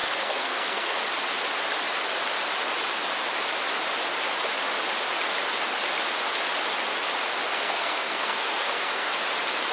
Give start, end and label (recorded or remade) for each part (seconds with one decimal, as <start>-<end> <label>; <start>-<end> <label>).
0.0-1.0 remade; 1.0-7.5 recorded; 7.5-9.1 remade; 9.1-9.7 recorded